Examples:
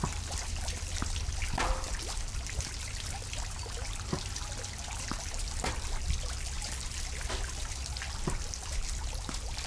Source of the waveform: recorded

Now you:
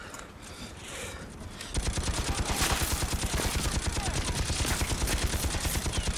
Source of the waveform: recorded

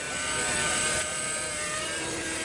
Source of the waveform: remade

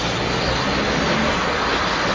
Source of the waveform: recorded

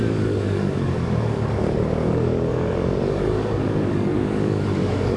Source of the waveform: remade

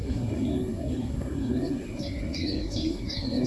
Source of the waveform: remade